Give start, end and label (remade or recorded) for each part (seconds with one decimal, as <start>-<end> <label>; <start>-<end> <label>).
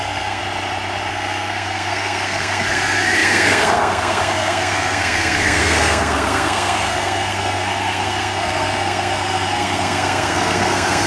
0.0-0.4 remade; 0.4-1.1 recorded; 1.1-11.1 remade